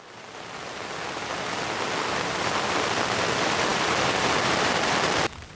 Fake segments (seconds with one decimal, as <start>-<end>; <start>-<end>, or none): none

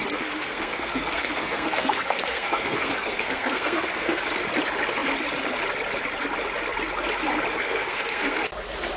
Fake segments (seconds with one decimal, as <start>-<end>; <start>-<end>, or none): 0.0-4.2; 7.6-8.4

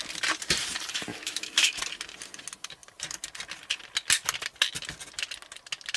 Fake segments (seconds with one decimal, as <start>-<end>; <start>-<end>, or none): 1.1-1.8

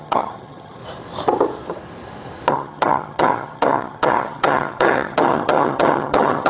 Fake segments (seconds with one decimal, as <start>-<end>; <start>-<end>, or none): 0.0-0.8; 2.5-6.5

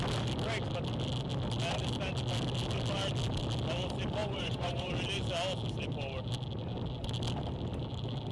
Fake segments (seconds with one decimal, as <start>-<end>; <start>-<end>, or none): 4.2-4.9

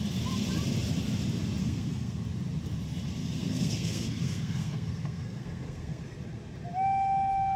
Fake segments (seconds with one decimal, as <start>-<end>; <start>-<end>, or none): 1.6-2.2; 3.2-6.0

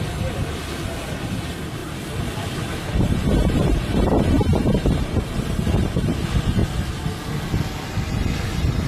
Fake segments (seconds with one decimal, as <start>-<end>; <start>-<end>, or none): 0.0-6.6; 8.4-8.9